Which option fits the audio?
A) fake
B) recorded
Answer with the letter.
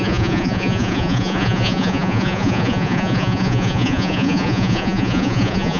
A